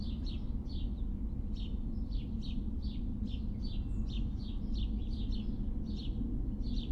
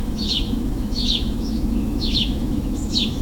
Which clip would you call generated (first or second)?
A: second